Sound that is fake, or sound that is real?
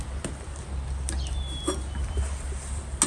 real